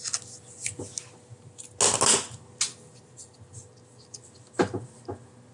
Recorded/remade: recorded